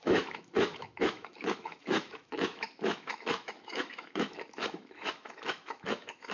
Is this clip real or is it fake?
fake